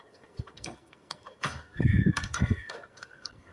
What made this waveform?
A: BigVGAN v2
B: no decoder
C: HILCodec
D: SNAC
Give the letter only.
D